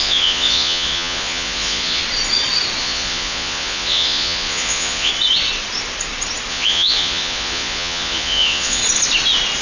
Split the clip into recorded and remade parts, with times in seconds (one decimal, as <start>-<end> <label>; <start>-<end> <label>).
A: 0.0-2.0 remade; 2.0-2.8 recorded; 2.8-5.1 remade; 5.1-6.5 recorded; 6.5-8.8 remade; 8.8-9.6 recorded